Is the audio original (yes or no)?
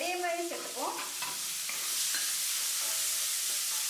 yes